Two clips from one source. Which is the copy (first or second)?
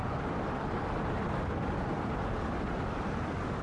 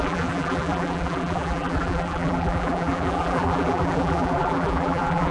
second